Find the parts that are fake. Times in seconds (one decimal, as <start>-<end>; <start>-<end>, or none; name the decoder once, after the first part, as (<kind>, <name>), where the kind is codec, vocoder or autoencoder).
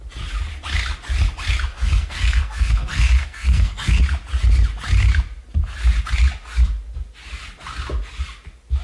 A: 1.7-4.0 (codec, SNAC)